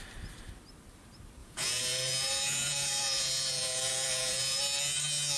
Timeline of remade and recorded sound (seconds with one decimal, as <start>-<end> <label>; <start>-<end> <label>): 0.0-1.4 recorded; 1.4-4.6 remade; 4.6-5.4 recorded

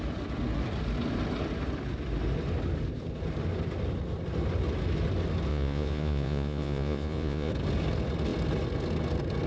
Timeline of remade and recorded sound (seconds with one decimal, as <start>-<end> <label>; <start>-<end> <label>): 0.0-5.5 recorded; 5.5-7.5 remade; 7.5-9.5 recorded

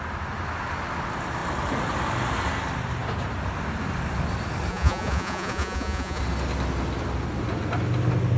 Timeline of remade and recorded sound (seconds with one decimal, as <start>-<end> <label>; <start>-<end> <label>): 0.0-4.7 recorded; 4.7-6.2 remade; 6.2-8.4 recorded

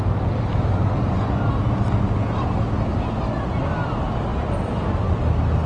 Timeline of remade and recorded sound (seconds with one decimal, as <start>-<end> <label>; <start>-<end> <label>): 0.0-5.7 recorded

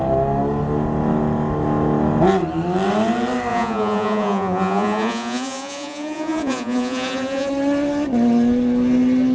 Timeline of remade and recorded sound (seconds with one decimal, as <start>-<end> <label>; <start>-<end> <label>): 0.0-3.5 recorded; 3.5-7.5 remade; 7.5-9.3 recorded

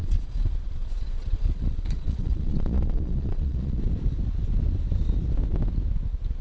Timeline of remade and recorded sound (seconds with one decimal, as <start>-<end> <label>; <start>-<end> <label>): 0.0-3.8 remade; 3.8-6.4 recorded

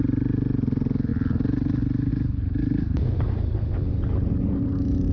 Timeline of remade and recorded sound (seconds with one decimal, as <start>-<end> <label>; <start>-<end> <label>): 0.0-5.1 recorded

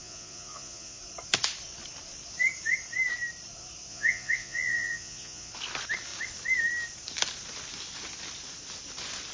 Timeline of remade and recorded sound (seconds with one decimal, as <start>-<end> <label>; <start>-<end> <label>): 0.0-1.0 remade; 1.0-3.9 recorded; 3.9-5.5 remade; 5.5-9.3 recorded